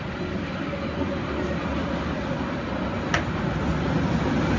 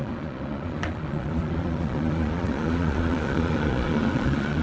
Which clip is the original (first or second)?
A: first